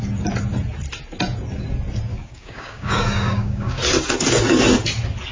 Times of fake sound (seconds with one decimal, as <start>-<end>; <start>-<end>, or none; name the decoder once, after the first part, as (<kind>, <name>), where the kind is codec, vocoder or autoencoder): 2.1-3.8 (codec, DAC)